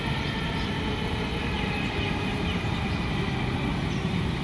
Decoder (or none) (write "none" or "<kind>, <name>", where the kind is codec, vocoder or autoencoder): none